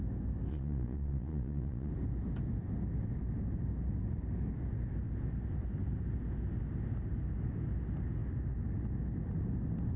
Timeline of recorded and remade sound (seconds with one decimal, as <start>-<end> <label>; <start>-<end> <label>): 0.0-0.5 recorded; 0.5-1.9 remade; 1.9-10.0 recorded